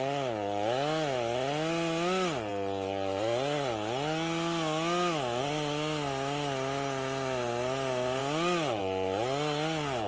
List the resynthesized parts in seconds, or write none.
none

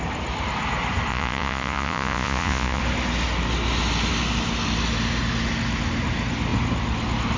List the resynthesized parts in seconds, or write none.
1.1-2.8 (vocoder, Vocos)